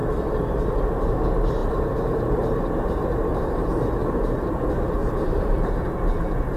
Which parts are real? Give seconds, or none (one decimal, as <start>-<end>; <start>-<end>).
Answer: 0.0-1.6; 3.9-5.0; 5.7-6.6